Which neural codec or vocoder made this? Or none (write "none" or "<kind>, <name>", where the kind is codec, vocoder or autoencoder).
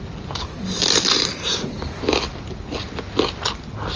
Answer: none